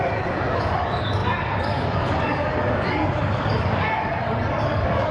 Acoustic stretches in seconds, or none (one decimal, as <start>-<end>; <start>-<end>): none